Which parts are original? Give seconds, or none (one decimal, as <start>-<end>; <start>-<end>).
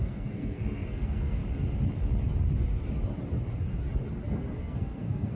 1.4-4.6